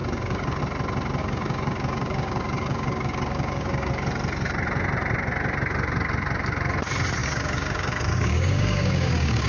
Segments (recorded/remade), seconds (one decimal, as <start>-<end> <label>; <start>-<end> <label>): 0.0-0.6 remade; 0.6-1.2 recorded; 1.2-3.9 remade; 3.9-7.2 recorded; 7.2-9.5 remade

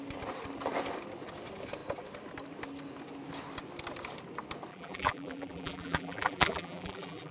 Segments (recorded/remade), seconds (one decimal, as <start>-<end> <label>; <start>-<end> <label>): 0.0-4.7 recorded; 4.7-7.3 remade

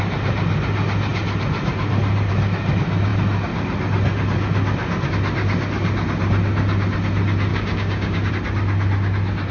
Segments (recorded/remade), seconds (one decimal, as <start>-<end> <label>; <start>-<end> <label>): 0.0-7.5 recorded; 7.5-8.3 remade; 8.3-9.5 recorded